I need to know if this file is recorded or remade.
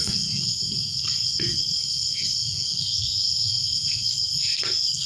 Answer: remade